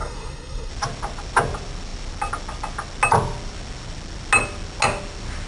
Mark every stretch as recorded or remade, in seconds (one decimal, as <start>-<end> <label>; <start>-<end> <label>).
0.0-0.7 remade; 0.7-5.5 recorded